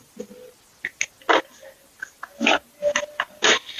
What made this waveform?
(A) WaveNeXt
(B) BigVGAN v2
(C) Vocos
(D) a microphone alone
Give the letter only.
D